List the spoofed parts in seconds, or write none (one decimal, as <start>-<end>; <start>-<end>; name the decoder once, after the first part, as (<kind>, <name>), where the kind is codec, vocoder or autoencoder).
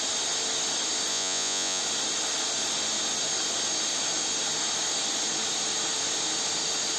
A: 1.1-1.8 (vocoder, Vocos)